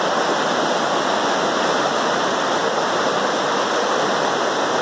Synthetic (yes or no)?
no